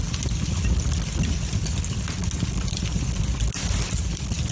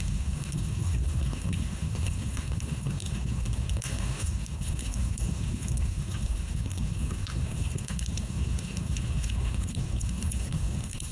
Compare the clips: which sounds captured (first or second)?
first